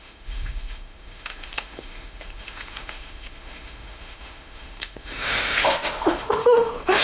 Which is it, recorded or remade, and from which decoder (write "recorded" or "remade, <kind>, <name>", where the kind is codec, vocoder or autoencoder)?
remade, autoencoder, DAC-VAE